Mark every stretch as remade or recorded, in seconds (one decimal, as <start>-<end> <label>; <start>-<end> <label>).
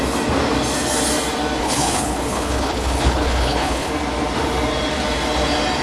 0.0-1.6 recorded; 1.6-3.9 remade; 3.9-5.8 recorded